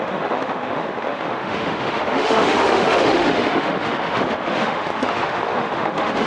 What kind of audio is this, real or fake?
fake